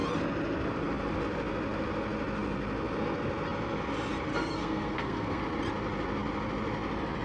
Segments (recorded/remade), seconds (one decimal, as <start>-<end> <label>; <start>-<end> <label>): 0.0-4.3 recorded; 4.3-5.4 remade; 5.4-7.2 recorded